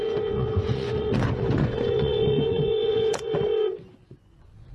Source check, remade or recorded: remade